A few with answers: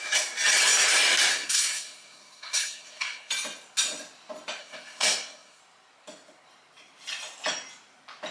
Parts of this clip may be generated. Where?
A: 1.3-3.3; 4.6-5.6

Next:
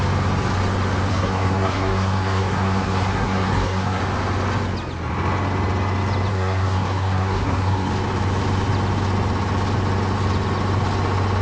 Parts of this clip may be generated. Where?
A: 1.1-4.0; 6.3-7.9